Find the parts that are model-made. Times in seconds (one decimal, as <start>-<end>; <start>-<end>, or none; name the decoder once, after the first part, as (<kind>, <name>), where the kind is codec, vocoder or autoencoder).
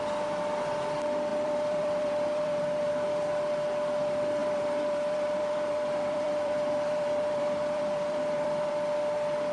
1.3-2.9 (vocoder, BigVGAN v2); 4.4-8.7